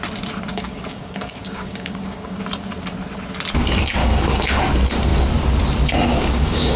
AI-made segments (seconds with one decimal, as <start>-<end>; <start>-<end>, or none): 0.5-2.4; 4.0-4.6; 6.1-6.8